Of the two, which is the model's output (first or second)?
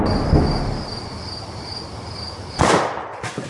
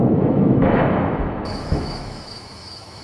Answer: second